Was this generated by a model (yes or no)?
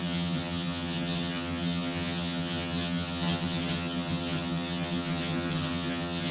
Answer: yes